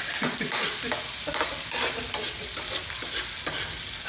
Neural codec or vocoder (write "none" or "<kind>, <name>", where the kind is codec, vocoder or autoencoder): none